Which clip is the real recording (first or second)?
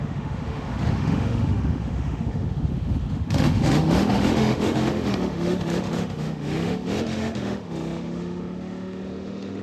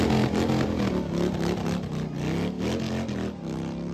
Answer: second